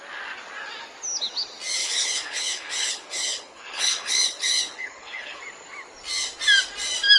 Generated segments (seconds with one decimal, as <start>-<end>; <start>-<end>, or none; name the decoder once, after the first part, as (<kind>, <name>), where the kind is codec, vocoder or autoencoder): 1.8-5.4 (codec, HILCodec)